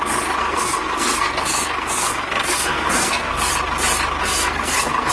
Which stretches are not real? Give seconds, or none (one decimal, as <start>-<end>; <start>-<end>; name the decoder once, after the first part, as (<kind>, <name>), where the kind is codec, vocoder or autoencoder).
0.4-3.5 (codec, SNAC); 4.2-5.1